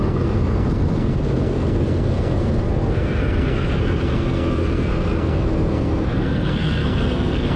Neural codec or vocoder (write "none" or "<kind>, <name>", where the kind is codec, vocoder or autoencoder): codec, SNAC